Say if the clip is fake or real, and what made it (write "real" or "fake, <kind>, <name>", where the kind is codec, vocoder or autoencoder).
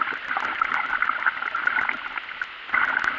real